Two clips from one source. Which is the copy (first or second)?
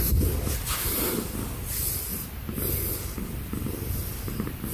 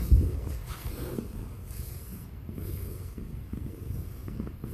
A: second